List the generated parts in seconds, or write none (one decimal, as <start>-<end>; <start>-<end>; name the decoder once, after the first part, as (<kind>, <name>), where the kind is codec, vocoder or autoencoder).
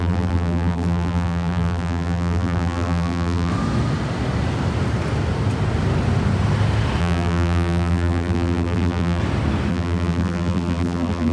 0.0-3.5 (vocoder, BigVGAN v2); 7.0-9.2; 9.7-11.3